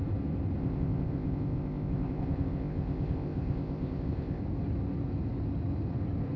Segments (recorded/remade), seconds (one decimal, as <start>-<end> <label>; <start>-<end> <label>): 0.0-0.6 recorded; 0.6-4.4 remade; 4.4-6.4 recorded